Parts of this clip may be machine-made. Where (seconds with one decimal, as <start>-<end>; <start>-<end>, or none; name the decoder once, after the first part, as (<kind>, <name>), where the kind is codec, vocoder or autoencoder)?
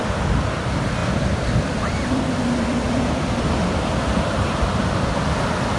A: 1.0-3.5 (vocoder, BigVGAN v2)